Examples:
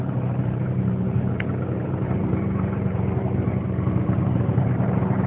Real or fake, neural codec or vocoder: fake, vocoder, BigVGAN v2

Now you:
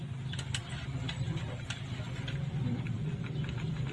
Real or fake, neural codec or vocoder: fake, vocoder, BigVGAN v2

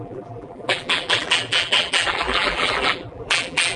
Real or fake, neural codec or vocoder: fake, vocoder, BigVGAN v2